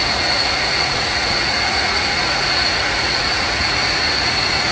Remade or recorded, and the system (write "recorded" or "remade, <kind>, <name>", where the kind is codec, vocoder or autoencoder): remade, vocoder, Vocos